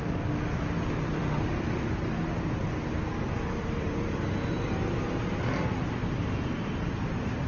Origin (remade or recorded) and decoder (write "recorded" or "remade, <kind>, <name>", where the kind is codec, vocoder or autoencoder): recorded